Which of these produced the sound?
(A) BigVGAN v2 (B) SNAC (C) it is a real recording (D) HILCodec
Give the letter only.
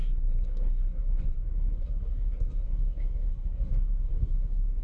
B